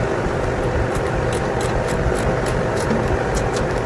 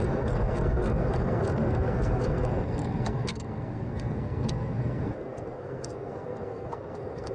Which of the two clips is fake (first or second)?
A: second